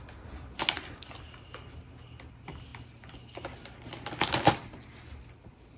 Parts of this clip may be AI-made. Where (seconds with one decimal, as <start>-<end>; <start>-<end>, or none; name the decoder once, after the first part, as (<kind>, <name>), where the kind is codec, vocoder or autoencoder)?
none